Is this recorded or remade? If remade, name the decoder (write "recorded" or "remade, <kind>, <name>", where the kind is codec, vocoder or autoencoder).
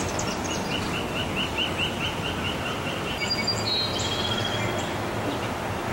recorded